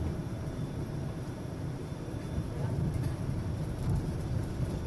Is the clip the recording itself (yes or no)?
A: no